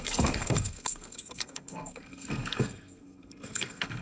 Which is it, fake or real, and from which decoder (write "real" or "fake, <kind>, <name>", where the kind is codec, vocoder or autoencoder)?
fake, codec, SNAC